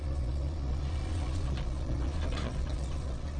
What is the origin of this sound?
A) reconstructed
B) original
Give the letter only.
A